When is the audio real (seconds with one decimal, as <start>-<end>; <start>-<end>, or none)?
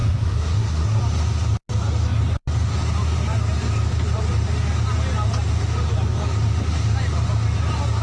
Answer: 1.0-8.0